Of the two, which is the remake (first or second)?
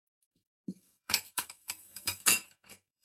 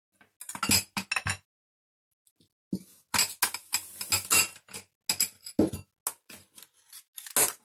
first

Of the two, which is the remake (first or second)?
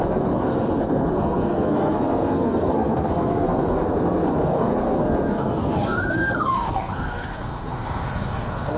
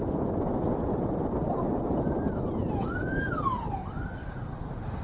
first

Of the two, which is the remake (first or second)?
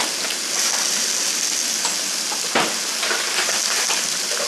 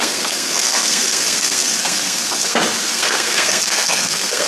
second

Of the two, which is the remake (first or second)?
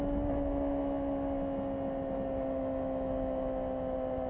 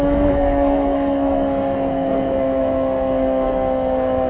second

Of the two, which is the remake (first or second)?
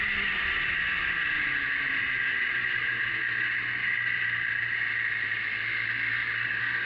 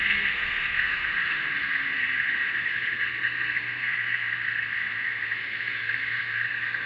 second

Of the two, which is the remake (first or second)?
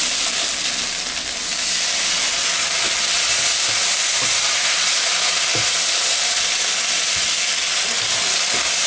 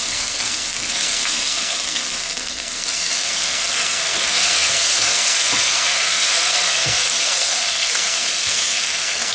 second